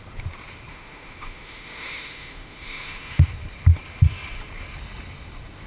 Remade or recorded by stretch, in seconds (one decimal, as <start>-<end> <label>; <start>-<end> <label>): 0.0-0.7 recorded; 0.7-3.3 remade; 3.3-5.7 recorded

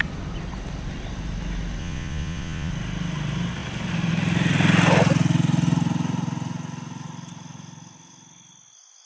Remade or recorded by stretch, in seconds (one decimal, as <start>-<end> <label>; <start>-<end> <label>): 0.0-1.8 recorded; 1.8-2.7 remade; 2.7-9.1 recorded

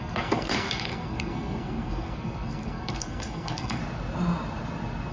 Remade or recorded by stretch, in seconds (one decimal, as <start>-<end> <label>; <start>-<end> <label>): 0.0-3.8 remade; 3.8-5.1 recorded

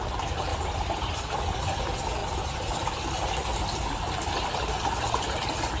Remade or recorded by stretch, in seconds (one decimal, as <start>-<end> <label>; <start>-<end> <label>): 0.0-0.5 recorded; 0.5-1.6 remade; 1.6-2.2 recorded; 2.2-5.8 remade

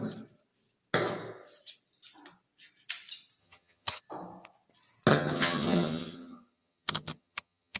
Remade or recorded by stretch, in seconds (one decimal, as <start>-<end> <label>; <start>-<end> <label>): 0.0-3.4 recorded; 3.4-4.0 remade; 4.0-5.1 recorded; 5.1-7.8 remade

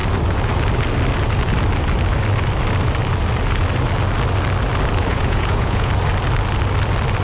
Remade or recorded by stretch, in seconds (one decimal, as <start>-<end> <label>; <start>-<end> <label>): 0.0-5.1 recorded; 5.1-5.9 remade; 5.9-7.2 recorded